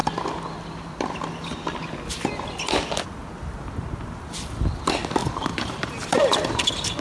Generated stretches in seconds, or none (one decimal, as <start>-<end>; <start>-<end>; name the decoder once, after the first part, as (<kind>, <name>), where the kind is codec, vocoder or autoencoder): 5.2-7.0 (vocoder, BigVGAN v2)